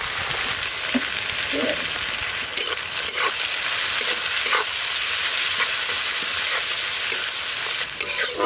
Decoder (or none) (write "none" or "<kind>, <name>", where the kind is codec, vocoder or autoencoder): none